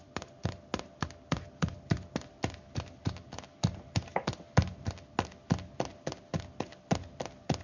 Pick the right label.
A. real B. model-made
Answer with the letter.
A